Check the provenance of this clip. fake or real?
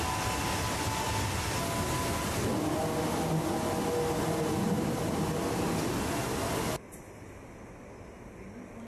real